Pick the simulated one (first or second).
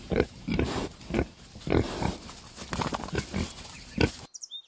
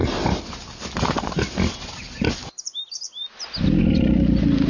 first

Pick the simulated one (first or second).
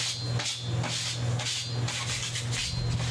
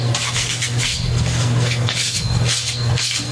second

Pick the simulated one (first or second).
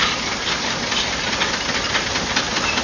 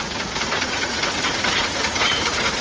second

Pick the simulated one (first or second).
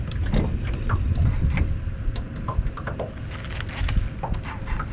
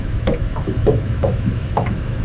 second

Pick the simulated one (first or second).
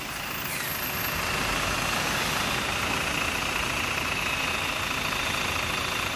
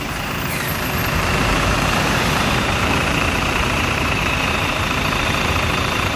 second